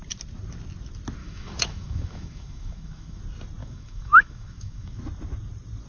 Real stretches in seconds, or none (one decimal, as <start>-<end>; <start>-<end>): 0.0-1.2; 3.2-3.6; 5.0-5.9